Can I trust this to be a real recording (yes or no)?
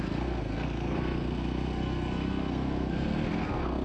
no